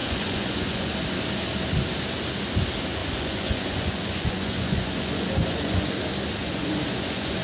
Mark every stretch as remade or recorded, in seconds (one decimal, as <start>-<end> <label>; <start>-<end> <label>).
0.0-0.9 remade; 0.9-3.0 recorded; 3.0-5.9 remade; 5.9-6.4 recorded; 6.4-7.4 remade